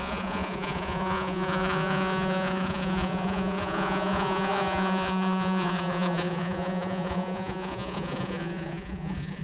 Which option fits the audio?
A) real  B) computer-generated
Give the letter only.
B